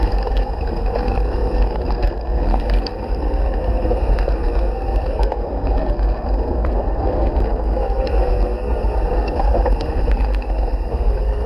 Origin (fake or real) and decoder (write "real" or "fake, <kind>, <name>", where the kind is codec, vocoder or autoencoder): fake, codec, SNAC